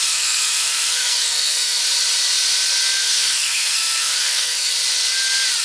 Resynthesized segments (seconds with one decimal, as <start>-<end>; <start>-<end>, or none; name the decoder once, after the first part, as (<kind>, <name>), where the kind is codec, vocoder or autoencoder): 0.0-1.8 (codec, SNAC); 3.0-4.7